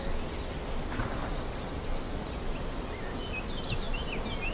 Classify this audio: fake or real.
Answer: real